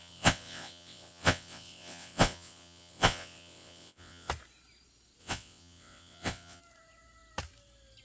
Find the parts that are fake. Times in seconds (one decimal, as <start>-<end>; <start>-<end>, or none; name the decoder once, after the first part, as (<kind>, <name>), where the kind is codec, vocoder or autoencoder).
0.0-4.3 (vocoder, WaveNeXt); 5.2-6.6